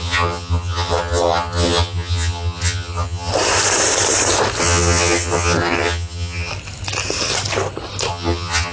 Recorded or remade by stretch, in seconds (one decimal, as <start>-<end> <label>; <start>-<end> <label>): 0.0-3.3 remade; 3.3-4.6 recorded; 4.6-6.5 remade; 6.5-8.1 recorded; 8.1-8.7 remade